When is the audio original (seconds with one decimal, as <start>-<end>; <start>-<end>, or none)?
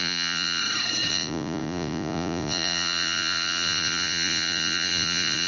0.6-1.1